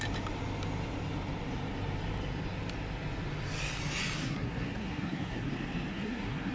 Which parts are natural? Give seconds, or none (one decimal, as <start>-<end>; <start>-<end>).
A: 0.0-4.2; 5.5-5.9